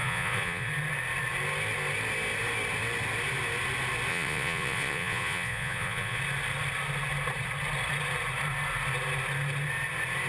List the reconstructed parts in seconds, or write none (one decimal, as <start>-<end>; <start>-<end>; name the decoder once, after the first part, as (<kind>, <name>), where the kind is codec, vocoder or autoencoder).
0.0-0.7 (vocoder, Vocos); 4.1-6.2